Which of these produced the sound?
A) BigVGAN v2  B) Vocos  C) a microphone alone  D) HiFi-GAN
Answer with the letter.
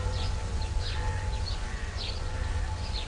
B